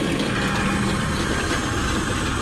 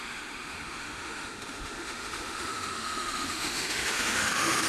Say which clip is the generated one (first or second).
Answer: second